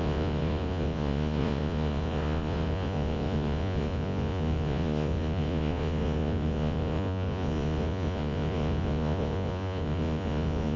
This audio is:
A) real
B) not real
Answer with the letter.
B